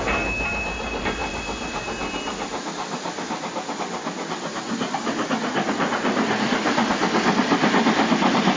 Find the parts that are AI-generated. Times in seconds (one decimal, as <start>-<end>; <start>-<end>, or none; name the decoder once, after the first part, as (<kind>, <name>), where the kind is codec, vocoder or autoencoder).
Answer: none